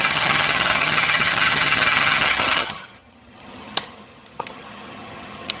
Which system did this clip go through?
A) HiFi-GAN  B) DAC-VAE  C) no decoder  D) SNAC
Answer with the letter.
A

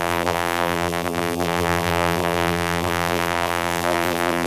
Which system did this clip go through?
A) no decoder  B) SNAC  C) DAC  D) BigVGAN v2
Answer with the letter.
D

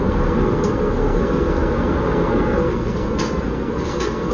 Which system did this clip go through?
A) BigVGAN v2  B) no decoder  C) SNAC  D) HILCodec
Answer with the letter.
C